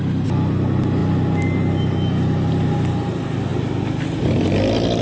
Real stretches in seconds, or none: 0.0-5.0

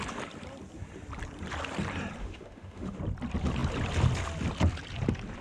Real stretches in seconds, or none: 0.0-2.2; 3.0-5.4

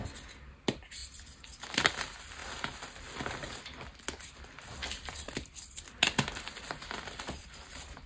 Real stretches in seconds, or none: 0.0-4.8; 7.5-8.1

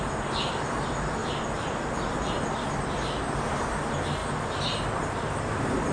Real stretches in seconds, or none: 0.0-1.2; 3.5-4.2; 5.1-5.9

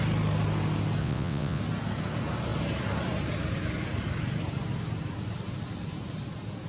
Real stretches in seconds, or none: 0.0-1.0; 1.6-6.7